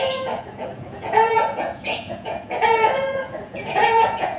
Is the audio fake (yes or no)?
yes